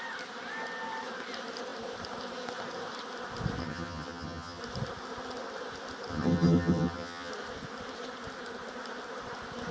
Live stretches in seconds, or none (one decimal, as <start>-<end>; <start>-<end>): 0.0-3.6; 4.6-6.1; 7.3-9.7